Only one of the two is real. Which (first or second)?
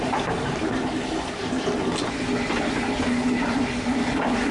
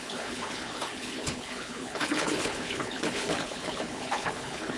first